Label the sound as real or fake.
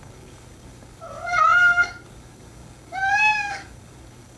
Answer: fake